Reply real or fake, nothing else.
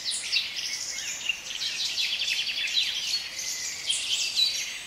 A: real